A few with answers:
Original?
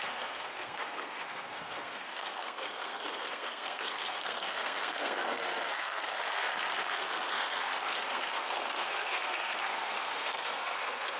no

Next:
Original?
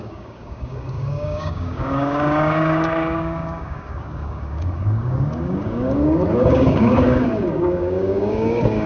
no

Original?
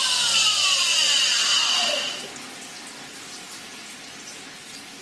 yes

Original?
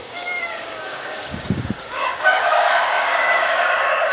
no